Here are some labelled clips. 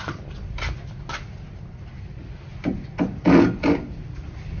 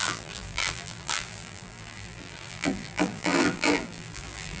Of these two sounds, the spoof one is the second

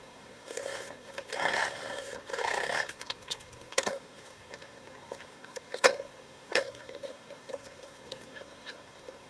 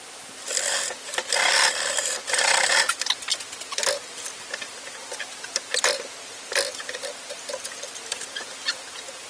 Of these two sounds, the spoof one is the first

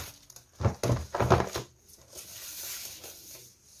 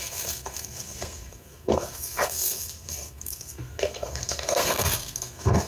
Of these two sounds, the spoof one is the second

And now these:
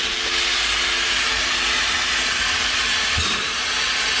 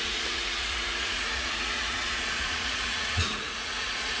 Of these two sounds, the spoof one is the second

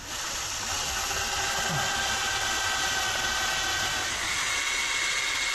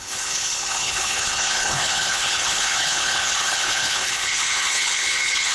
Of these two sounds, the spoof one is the second